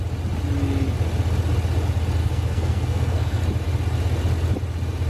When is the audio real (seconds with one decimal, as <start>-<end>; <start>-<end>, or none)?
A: 0.0-2.2; 3.4-5.1